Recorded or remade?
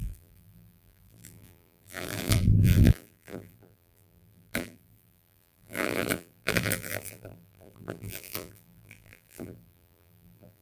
remade